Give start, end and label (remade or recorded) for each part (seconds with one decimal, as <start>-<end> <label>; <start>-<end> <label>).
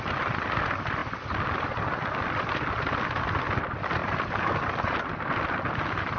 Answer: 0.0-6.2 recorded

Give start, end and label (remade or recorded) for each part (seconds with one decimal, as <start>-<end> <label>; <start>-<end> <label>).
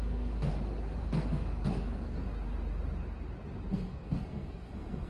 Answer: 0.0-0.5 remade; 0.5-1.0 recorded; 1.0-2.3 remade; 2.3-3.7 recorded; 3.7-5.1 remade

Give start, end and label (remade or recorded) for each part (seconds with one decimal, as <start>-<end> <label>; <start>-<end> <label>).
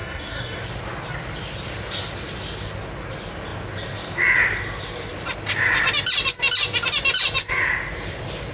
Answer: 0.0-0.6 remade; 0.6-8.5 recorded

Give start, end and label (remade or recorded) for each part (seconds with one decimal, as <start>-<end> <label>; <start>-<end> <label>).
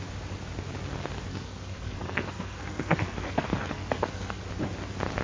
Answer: 0.0-1.3 recorded; 1.3-4.4 remade; 4.4-5.2 recorded